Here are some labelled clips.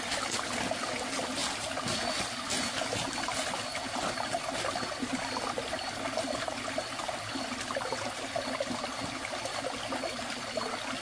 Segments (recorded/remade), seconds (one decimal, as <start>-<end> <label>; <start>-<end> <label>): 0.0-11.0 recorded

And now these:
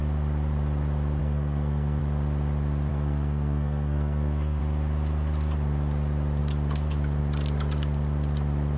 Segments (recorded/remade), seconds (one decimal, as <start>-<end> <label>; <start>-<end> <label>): 0.0-1.2 recorded; 1.2-2.0 remade; 2.0-2.9 recorded; 2.9-4.6 remade; 4.6-8.8 recorded

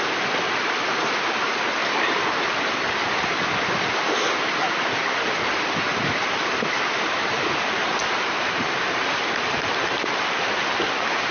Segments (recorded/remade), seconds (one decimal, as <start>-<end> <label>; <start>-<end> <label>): 0.0-1.8 recorded; 1.8-2.3 remade; 2.3-6.2 recorded; 6.2-10.5 remade; 10.5-11.3 recorded